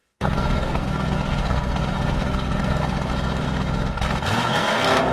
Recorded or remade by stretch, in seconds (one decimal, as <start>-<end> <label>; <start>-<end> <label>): 0.0-5.1 remade